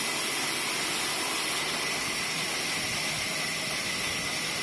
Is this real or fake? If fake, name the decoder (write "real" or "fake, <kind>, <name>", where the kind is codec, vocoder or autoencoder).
real